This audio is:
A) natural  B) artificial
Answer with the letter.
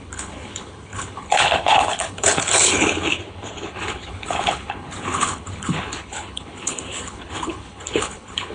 B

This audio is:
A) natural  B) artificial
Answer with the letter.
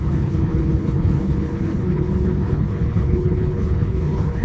B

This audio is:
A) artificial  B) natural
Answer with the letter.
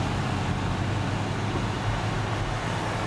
B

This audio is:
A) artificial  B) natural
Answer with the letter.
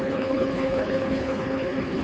A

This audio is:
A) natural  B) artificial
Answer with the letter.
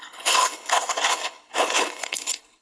B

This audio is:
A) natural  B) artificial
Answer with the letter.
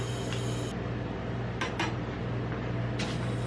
A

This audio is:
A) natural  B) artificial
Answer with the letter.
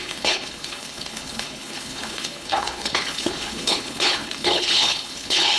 B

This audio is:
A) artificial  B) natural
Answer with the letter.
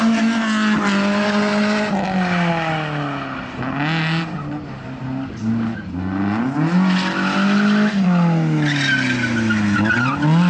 B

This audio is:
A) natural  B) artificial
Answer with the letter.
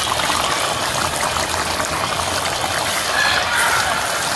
A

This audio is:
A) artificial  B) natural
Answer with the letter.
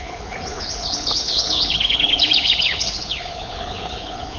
A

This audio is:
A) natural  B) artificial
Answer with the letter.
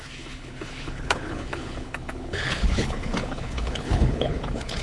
B